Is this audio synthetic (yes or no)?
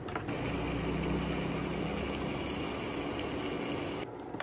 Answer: no